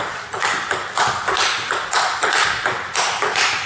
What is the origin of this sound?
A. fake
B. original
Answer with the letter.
B